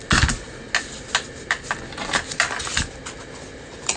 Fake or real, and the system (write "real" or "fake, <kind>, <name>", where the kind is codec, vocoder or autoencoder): real